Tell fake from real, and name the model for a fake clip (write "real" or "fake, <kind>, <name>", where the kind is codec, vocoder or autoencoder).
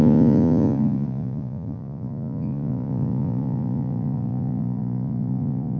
fake, vocoder, Vocos